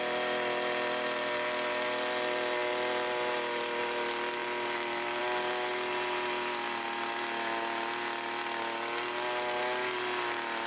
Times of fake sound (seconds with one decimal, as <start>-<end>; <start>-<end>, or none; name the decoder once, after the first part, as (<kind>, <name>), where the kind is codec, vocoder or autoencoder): none